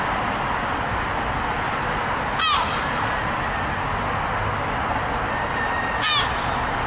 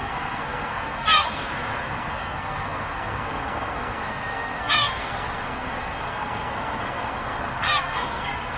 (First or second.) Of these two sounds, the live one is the first